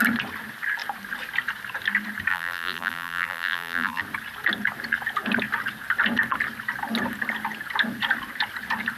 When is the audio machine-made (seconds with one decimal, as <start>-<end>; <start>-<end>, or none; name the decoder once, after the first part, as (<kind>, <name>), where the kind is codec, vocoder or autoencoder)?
2.3-4.0 (vocoder, BigVGAN v2)